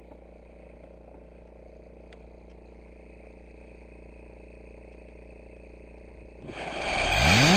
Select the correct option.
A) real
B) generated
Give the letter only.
A